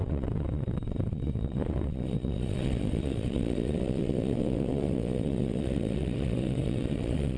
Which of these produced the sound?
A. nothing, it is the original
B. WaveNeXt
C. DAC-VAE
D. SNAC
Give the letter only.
B